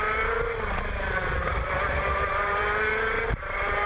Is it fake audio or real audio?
fake